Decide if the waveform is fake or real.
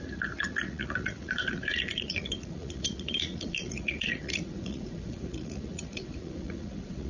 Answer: fake